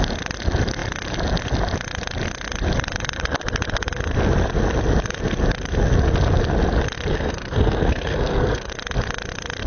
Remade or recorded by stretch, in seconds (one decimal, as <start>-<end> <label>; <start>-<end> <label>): 0.0-7.1 recorded; 7.1-8.7 remade; 8.7-9.7 recorded